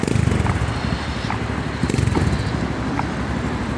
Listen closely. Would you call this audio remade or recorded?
recorded